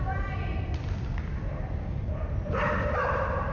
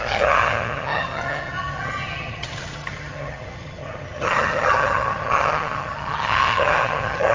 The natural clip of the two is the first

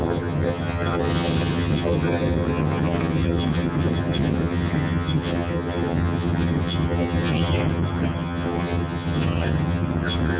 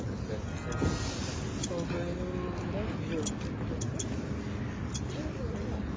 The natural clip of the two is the second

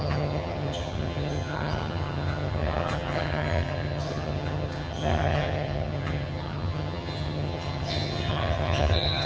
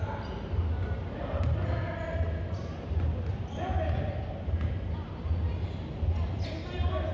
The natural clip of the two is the second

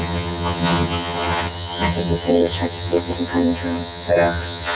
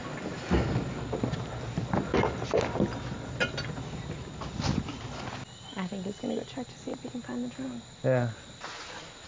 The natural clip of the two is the second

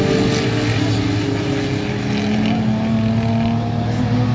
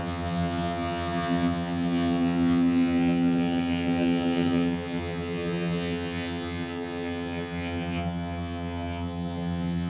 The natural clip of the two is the first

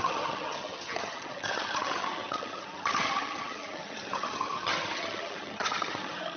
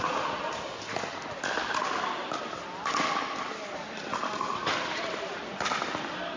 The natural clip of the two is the second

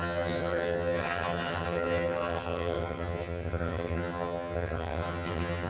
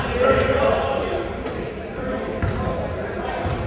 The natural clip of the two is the second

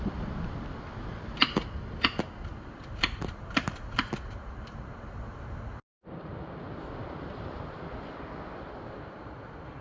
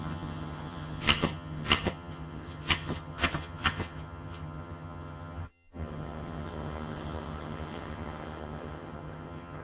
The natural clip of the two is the first